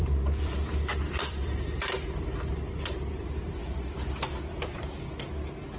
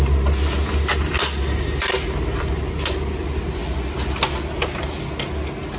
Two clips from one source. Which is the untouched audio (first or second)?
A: second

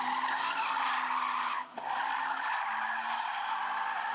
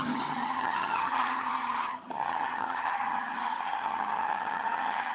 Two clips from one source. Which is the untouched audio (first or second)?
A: first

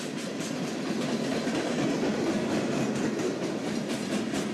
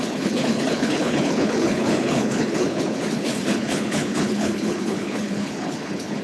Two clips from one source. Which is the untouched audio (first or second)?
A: first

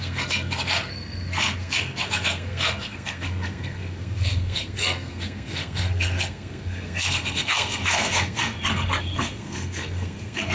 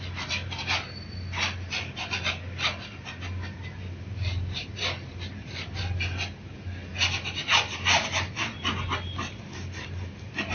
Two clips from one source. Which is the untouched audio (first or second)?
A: second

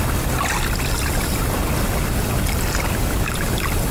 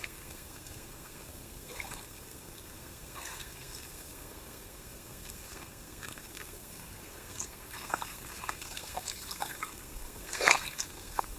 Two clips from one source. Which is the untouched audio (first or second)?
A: first